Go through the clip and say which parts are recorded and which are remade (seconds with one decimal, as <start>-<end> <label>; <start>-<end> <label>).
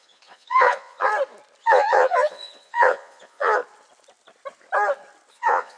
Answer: 0.0-1.1 remade; 1.1-1.6 recorded; 1.6-3.6 remade; 3.6-5.3 recorded; 5.3-5.8 remade